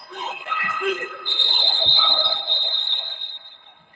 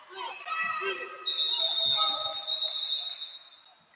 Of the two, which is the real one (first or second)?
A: second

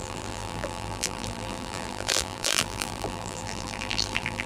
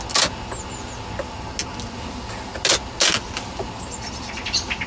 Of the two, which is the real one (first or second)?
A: second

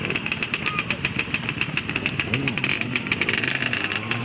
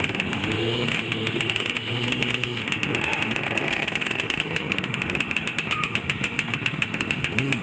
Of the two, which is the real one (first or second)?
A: first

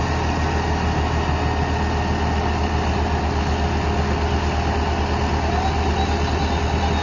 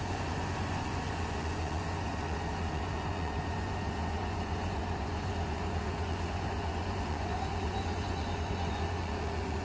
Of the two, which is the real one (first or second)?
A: first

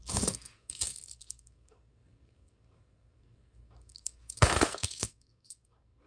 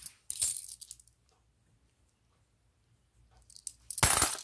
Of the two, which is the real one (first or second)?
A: second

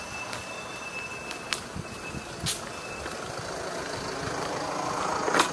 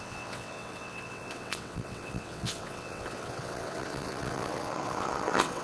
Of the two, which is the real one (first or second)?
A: first